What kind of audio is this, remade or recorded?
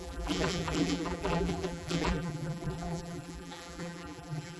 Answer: remade